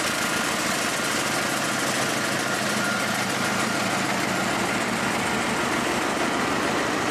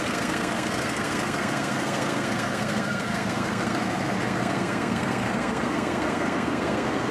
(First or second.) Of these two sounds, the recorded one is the first